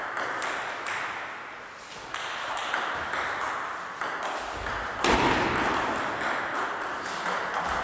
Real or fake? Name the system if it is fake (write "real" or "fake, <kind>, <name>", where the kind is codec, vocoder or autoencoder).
real